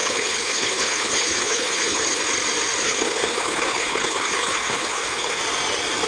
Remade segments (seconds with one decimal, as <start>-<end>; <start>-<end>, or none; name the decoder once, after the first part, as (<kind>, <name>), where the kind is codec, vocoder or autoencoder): 0.0-2.2 (codec, HILCodec); 2.8-5.4